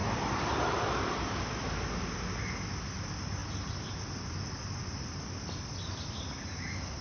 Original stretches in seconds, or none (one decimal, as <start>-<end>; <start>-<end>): 1.7-7.0